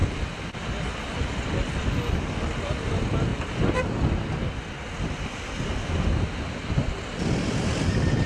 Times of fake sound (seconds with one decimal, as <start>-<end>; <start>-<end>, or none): none